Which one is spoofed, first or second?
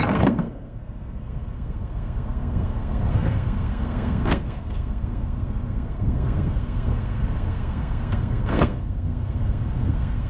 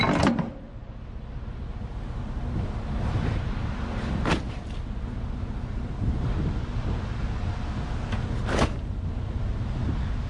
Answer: first